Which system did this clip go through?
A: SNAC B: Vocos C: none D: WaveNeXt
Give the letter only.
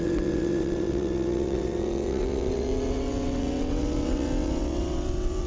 D